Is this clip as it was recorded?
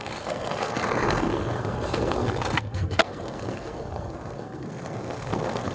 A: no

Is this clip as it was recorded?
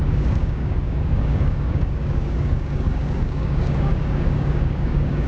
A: no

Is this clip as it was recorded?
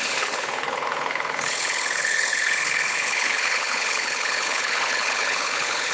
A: no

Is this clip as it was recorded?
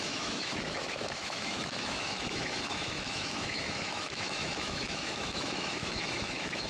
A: no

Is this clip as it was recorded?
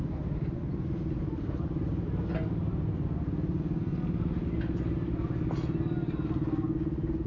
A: yes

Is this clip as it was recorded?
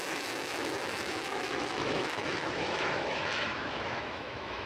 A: no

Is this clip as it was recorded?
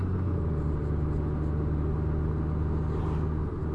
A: yes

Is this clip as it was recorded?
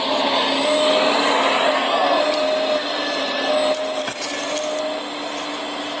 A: yes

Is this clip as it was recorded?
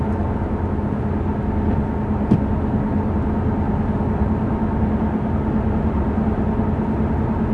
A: yes